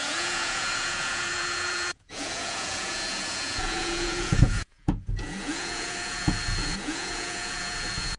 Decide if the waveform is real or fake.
fake